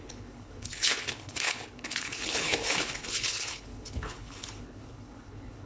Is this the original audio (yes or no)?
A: no